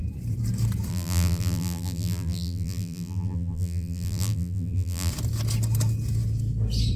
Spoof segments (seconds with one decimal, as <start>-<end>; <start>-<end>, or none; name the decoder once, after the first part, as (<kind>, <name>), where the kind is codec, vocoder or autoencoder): 0.9-5.1 (vocoder, BigVGAN v2)